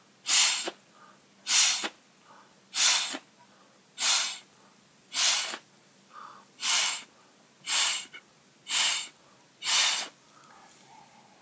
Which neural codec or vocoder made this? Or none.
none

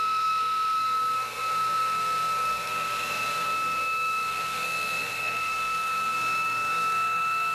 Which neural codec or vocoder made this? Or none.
codec, SNAC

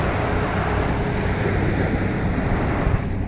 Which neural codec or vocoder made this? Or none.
none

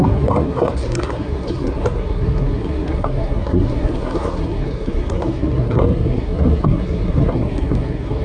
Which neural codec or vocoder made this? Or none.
codec, SNAC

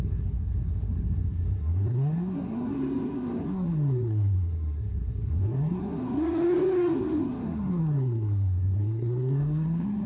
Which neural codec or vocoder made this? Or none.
codec, SNAC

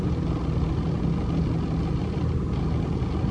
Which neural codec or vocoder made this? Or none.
none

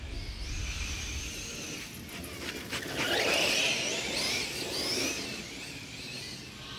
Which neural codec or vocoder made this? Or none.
none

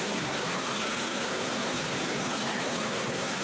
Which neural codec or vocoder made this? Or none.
codec, SNAC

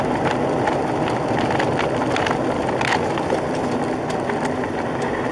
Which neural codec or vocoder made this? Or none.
none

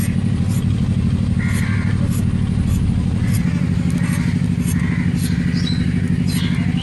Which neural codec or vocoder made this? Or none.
none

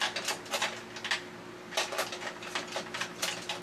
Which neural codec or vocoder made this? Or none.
none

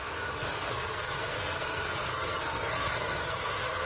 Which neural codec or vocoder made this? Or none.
codec, SNAC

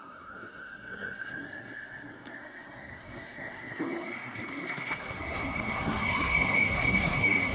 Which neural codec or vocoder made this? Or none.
codec, SNAC